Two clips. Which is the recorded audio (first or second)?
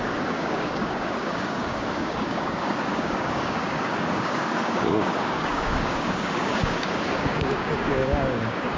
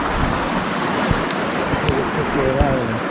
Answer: second